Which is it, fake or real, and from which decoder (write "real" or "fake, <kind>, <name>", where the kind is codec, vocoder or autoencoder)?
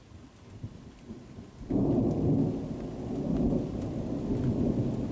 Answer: real